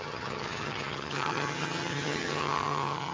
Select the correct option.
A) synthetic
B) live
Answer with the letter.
A